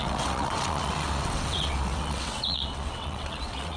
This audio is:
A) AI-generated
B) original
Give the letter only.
A